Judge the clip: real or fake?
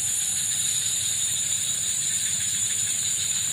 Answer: fake